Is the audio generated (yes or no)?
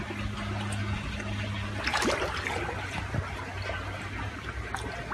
no